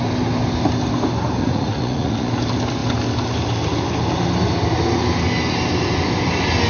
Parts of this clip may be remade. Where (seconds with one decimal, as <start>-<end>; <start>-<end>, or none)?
1.4-2.3

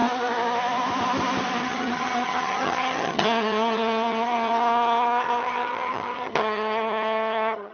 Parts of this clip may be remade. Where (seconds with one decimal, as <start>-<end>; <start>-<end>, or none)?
1.6-7.7

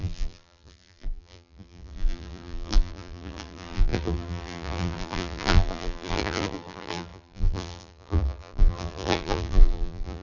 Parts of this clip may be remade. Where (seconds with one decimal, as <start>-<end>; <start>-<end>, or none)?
0.0-10.2

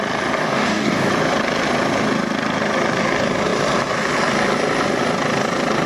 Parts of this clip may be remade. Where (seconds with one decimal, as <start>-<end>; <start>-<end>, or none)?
0.4-1.1

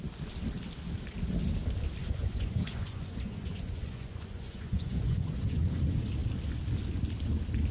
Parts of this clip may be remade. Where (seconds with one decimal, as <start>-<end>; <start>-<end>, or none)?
2.0-5.8